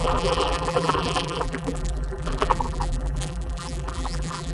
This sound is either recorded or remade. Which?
remade